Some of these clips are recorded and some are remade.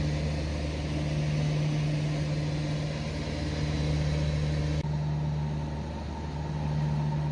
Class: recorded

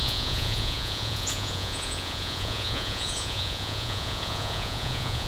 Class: remade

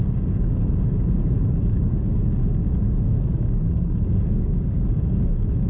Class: remade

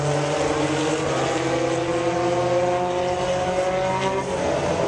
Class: recorded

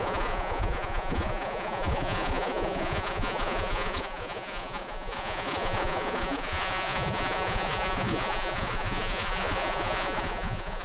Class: remade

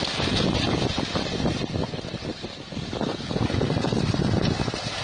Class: recorded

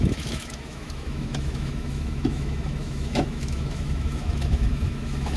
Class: remade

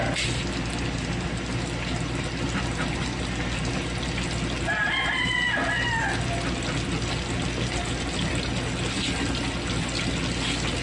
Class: recorded